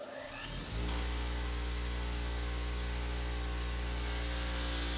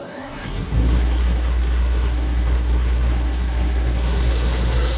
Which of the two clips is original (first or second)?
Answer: first